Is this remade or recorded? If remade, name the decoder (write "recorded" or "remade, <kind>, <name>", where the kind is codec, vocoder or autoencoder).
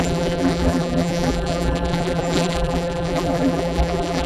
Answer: remade, vocoder, BigVGAN v2